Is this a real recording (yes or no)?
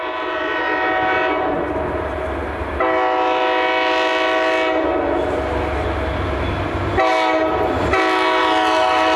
yes